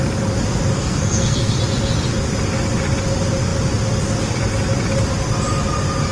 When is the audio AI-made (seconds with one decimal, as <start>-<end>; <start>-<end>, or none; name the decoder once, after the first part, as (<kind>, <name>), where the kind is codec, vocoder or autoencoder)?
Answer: 0.7-1.6 (codec, SNAC)